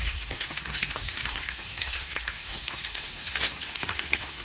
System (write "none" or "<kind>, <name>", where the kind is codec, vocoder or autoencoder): codec, SNAC